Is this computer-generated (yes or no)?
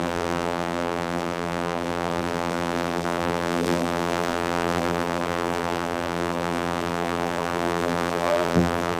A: yes